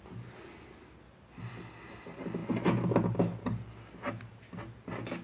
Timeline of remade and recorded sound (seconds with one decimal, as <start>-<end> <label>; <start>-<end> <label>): 0.0-5.2 recorded

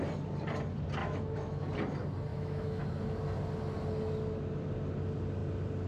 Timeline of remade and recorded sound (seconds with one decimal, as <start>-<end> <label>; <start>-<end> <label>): 0.0-1.0 recorded; 1.0-1.6 remade; 1.6-2.3 recorded; 2.3-2.8 remade; 2.8-5.9 recorded

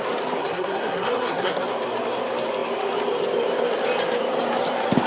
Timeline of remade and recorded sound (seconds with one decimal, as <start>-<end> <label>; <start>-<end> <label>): 0.0-0.4 recorded; 0.4-1.6 remade; 1.6-5.1 recorded

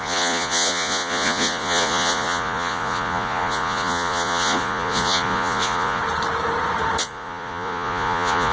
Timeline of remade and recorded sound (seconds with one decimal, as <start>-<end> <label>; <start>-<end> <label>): 0.0-6.0 remade; 6.0-7.0 recorded; 7.0-8.5 remade

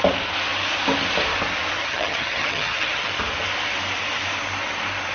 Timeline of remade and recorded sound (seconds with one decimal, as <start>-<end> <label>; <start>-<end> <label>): 0.0-1.8 recorded; 1.8-3.1 remade; 3.1-5.1 recorded

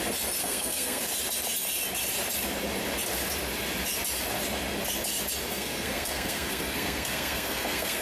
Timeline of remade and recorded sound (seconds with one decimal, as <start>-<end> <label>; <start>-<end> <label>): 0.0-0.4 recorded; 0.4-1.0 remade; 1.0-5.5 recorded; 5.5-8.0 remade